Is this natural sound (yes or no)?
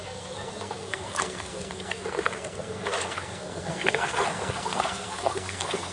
no